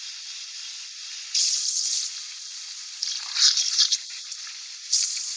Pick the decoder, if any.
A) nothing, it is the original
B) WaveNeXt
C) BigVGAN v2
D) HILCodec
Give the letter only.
C